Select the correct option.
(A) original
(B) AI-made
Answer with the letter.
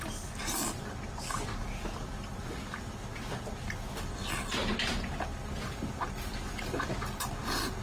A